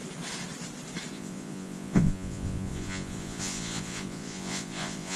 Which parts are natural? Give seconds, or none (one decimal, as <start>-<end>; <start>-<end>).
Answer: 0.0-1.1